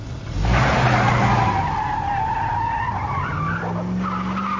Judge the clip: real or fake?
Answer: real